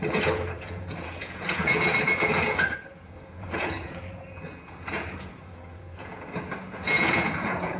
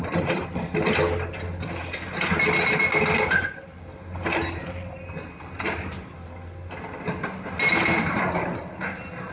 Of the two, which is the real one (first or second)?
second